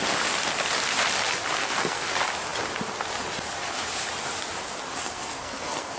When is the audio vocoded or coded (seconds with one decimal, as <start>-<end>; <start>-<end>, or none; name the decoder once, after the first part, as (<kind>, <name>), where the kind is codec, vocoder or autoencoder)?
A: 1.6-2.1 (codec, SNAC); 5.0-6.0